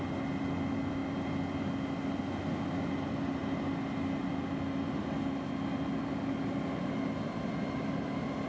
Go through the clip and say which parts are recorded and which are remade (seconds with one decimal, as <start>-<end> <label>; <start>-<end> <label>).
0.0-8.5 recorded

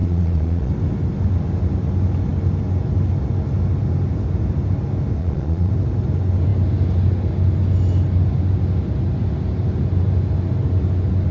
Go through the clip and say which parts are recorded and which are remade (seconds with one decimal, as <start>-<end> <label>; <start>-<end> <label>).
0.0-0.7 remade; 0.7-5.2 recorded; 5.2-5.7 remade; 5.7-11.3 recorded

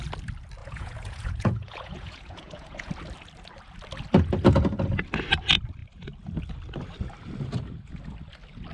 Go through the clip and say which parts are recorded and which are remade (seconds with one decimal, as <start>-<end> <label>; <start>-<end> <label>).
0.0-0.6 recorded; 0.6-2.9 remade; 2.9-8.7 recorded

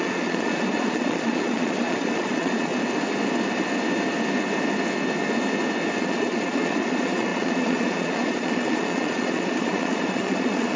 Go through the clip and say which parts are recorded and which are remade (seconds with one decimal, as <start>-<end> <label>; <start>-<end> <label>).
0.0-2.7 remade; 2.7-6.0 recorded; 6.0-10.8 remade

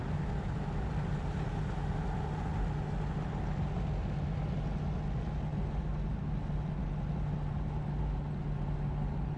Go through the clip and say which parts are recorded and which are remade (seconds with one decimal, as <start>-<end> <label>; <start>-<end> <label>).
0.0-9.4 recorded

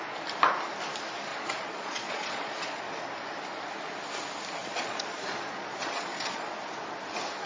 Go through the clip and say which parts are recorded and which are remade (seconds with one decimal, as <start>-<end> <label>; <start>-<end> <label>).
0.0-1.3 recorded; 1.3-2.8 remade; 2.8-4.6 recorded; 4.6-6.5 remade; 6.5-7.5 recorded